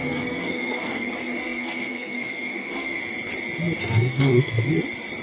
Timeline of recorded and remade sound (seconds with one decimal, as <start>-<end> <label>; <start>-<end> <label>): 0.0-3.0 remade; 3.0-3.8 recorded; 3.8-4.7 remade; 4.7-5.2 recorded